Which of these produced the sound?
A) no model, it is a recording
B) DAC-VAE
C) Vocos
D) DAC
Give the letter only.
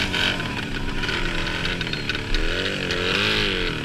A